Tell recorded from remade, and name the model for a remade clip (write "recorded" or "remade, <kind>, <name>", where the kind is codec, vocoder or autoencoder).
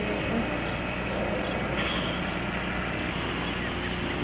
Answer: recorded